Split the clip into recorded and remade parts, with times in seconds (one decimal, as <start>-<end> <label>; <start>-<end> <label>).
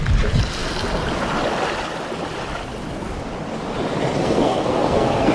0.0-4.2 recorded; 4.2-5.3 remade